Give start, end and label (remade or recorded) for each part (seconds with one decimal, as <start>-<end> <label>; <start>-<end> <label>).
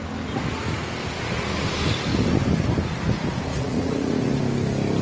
0.0-3.5 recorded; 3.5-4.4 remade; 4.4-5.0 recorded